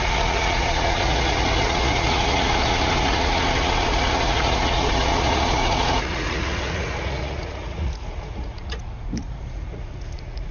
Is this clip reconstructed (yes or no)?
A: yes